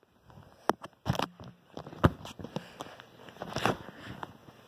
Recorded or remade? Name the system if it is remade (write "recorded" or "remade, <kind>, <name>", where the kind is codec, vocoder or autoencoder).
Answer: recorded